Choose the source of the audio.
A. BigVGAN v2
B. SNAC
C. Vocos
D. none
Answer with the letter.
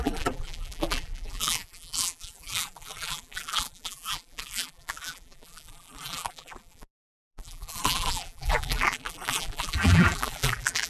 A